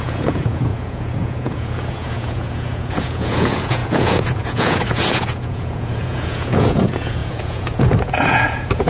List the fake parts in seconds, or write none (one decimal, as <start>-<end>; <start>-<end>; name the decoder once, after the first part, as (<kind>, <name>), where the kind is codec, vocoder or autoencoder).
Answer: 0.0-8.9 (vocoder, Vocos)